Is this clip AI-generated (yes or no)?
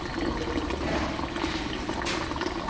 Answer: no